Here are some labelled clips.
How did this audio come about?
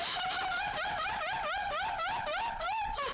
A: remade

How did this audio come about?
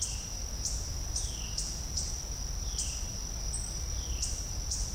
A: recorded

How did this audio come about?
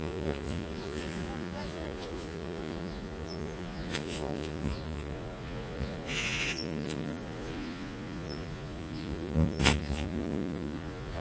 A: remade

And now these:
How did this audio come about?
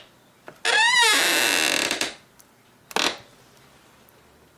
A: recorded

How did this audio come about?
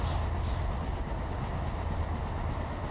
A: recorded